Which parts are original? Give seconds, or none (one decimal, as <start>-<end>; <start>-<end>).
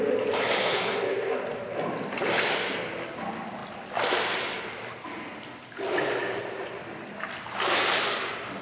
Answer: 0.0-0.6; 1.4-8.6